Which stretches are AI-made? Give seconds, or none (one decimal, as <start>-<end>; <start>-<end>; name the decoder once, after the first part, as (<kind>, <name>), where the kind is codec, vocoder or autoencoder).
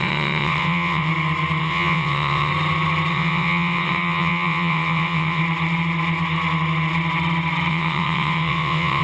0.0-1.1 (vocoder, WaveNeXt); 1.6-2.5; 3.1-5.4; 7.7-9.0